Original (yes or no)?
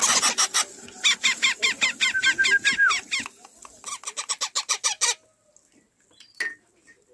yes